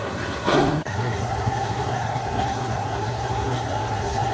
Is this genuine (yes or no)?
no